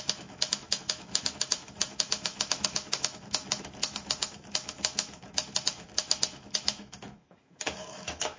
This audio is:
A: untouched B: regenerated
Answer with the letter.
B